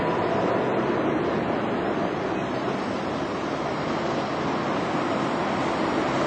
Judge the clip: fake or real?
real